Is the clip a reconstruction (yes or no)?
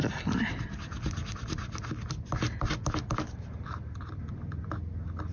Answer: no